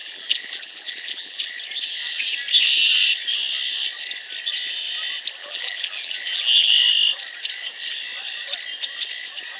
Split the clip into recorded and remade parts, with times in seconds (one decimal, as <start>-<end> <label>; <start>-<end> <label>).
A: 0.0-1.5 remade; 1.5-5.4 recorded; 5.4-6.9 remade; 6.9-9.6 recorded